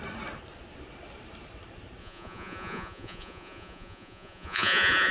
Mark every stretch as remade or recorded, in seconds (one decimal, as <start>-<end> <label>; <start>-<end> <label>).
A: 0.0-2.0 recorded; 2.0-5.1 remade